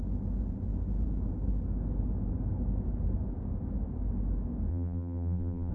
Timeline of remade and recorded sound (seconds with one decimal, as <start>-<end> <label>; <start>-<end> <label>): 0.0-4.7 recorded; 4.7-5.7 remade